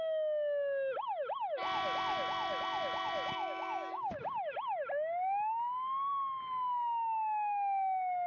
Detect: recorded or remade recorded